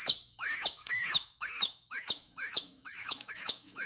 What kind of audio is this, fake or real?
fake